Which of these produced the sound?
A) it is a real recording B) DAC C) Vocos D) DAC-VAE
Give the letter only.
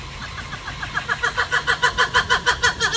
A